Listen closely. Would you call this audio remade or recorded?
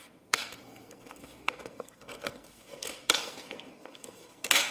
remade